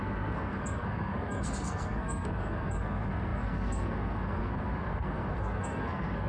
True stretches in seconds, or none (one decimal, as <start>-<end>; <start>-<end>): none